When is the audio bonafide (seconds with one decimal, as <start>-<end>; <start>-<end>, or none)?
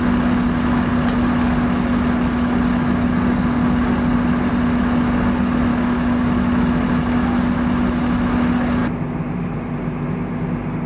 0.0-5.7; 6.2-10.9